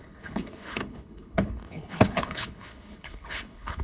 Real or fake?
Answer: fake